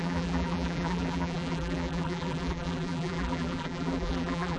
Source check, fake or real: fake